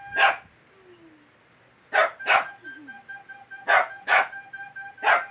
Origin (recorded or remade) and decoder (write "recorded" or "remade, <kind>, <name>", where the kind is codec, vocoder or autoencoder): recorded